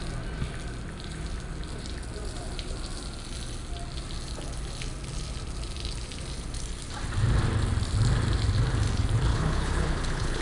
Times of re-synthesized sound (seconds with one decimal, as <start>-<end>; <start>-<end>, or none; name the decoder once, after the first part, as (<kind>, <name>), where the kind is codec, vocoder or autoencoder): 9.3-10.4 (codec, HILCodec)